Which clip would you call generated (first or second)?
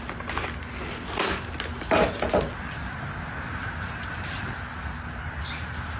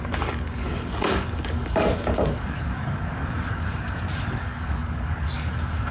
second